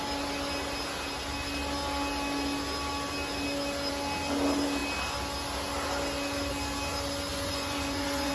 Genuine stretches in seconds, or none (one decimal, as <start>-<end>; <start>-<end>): 0.0-7.3